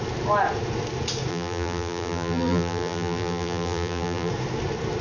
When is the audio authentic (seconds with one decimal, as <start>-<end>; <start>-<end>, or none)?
0.0-1.3; 4.3-5.0